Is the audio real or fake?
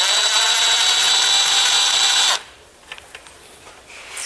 real